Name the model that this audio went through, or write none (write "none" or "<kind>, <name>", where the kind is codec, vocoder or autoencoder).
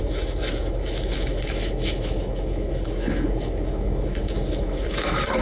autoencoder, DAC-VAE